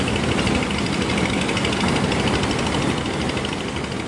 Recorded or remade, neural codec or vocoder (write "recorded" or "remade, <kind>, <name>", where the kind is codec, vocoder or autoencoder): recorded